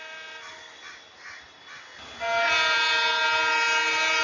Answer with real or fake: real